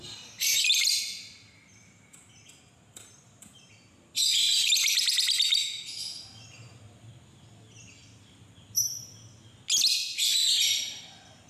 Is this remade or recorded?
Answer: recorded